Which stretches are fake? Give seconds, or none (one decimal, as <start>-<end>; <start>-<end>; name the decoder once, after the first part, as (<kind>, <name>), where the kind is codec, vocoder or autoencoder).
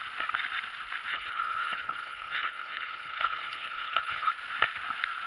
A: 1.1-4.3 (codec, HILCodec)